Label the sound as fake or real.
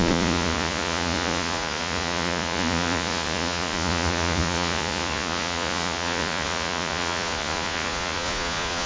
fake